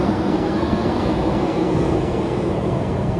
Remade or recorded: remade